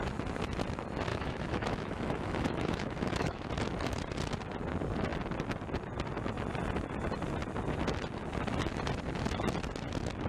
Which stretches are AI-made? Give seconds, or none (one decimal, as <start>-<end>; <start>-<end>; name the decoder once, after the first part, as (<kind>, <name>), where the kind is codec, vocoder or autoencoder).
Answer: 1.1-3.5 (autoencoder, DAC-VAE)